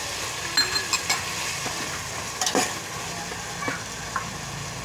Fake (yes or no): no